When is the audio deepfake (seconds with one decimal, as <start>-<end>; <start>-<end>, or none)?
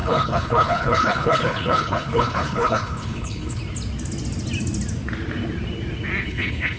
0.0-3.6; 6.2-6.8